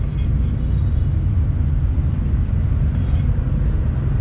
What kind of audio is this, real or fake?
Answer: real